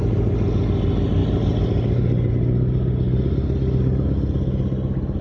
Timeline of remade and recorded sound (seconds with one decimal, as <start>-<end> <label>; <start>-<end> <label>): 0.0-5.2 recorded